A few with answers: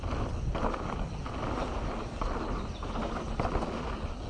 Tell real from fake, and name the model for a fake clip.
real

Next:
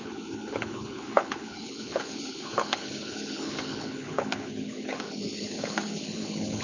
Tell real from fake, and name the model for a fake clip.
fake, codec, HILCodec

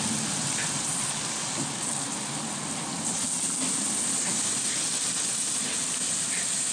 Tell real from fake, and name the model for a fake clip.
real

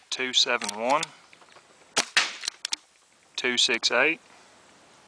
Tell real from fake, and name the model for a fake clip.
real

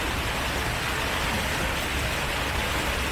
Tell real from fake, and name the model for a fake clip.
real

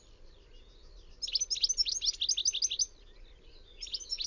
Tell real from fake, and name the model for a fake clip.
real